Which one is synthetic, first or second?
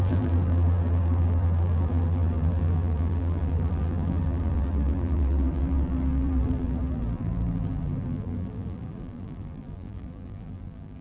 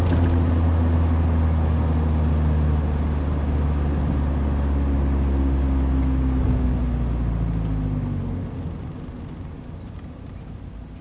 first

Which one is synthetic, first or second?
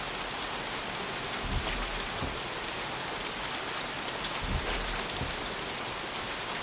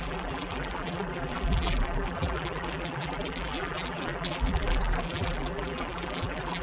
second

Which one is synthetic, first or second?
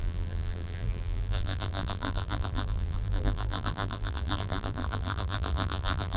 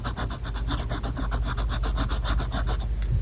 first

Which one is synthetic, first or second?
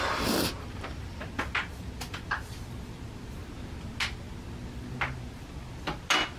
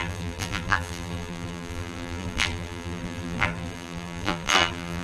second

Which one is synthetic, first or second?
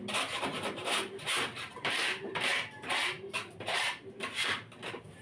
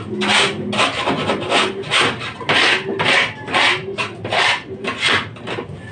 first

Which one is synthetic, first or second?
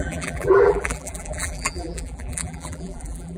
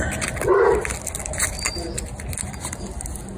first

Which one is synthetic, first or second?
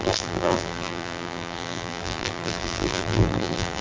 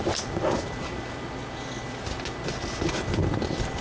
first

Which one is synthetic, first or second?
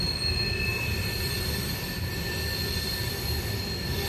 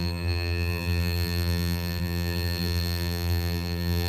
second